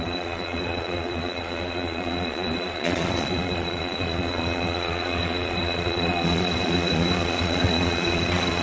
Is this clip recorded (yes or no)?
no